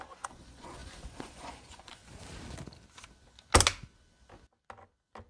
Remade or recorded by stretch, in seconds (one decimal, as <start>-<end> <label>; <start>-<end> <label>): 0.0-2.0 remade; 2.0-5.3 recorded

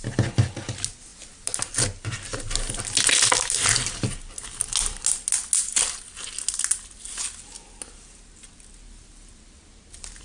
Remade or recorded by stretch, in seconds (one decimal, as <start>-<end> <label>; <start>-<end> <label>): 0.0-10.2 recorded

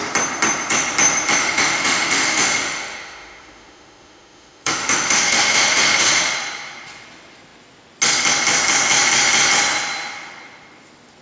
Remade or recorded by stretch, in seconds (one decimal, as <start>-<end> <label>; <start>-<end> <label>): 0.0-1.4 recorded; 1.4-6.3 remade; 6.3-11.2 recorded

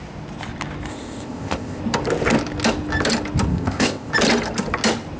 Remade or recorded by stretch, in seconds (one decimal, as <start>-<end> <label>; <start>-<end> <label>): 0.0-0.9 recorded; 0.9-1.8 remade; 1.8-3.5 recorded; 3.5-4.1 remade; 4.1-5.2 recorded

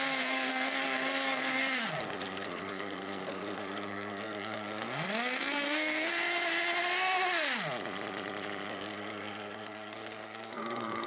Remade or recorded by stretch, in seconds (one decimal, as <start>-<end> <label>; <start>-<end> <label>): 0.0-6.1 remade; 6.1-8.7 recorded; 8.7-11.1 remade

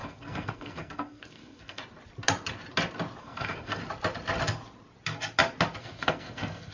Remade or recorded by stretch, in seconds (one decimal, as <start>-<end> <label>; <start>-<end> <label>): 0.0-1.8 remade; 1.8-3.2 recorded; 3.2-3.8 remade; 3.8-5.8 recorded; 5.8-6.7 remade

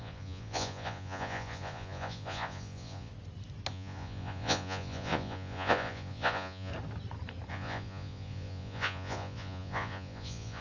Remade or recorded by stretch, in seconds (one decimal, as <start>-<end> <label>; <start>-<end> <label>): 0.0-3.1 remade; 3.1-3.7 recorded; 3.7-6.7 remade; 6.7-7.5 recorded; 7.5-10.6 remade

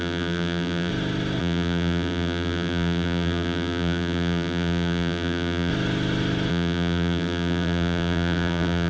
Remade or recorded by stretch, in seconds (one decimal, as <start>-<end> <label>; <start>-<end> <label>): 0.0-0.9 remade; 0.9-1.4 recorded; 1.4-5.7 remade; 5.7-6.5 recorded; 6.5-8.9 remade